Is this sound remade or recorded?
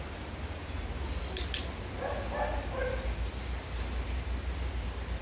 recorded